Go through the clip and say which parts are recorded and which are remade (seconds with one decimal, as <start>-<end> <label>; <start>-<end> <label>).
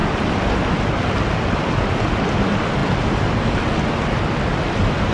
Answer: 0.0-5.1 recorded